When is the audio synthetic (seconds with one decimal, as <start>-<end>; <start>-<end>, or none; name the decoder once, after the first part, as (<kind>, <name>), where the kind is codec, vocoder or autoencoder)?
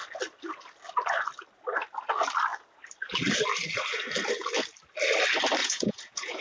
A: 5.6-6.4 (vocoder, Vocos)